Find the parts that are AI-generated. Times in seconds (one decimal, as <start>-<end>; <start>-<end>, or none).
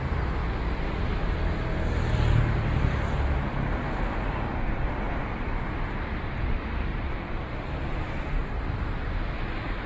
6.9-9.9